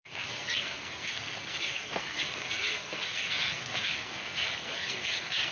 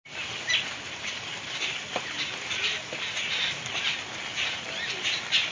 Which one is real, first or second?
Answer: second